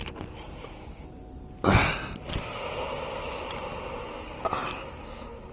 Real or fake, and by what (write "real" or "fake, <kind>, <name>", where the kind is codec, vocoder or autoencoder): real